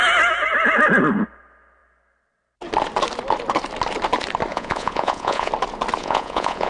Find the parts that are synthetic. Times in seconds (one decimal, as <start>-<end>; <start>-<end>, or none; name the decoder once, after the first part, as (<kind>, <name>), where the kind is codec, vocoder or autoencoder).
4.5-5.5 (vocoder, Vocos); 6.0-6.7